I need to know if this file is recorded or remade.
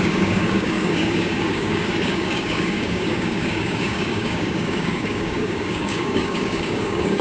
remade